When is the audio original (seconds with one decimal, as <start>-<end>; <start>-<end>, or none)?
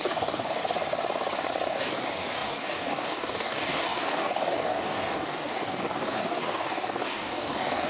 0.6-1.7